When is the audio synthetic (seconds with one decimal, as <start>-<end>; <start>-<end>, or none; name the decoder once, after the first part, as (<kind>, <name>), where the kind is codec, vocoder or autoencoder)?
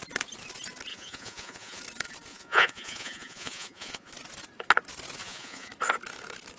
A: 0.9-1.8 (vocoder, Vocos); 2.3-4.1; 5.2-5.7